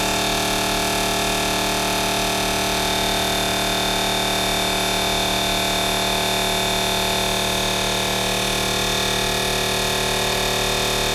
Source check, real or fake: real